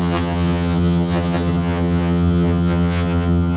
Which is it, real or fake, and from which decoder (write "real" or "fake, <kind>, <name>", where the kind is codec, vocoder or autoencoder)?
fake, vocoder, HiFi-GAN